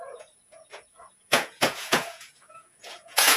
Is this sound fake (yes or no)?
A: yes